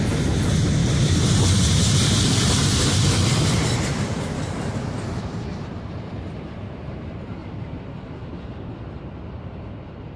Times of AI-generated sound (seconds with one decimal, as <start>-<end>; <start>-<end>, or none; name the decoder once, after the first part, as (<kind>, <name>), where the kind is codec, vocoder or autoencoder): 0.8-5.9 (vocoder, BigVGAN v2); 7.4-8.5